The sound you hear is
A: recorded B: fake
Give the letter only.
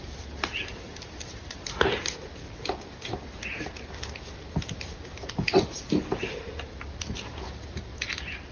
A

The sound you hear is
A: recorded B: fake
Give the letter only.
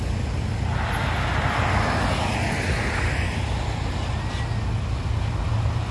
A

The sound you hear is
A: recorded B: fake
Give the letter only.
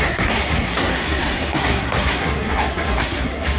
B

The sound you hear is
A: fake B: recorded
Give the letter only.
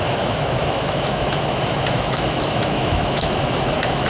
A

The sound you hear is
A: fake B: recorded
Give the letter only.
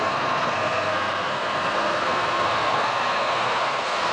A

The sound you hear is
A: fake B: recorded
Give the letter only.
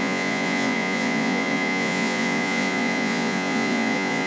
A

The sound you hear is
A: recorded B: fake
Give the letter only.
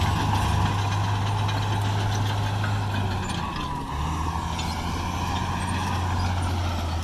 A